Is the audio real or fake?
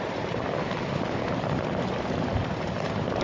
real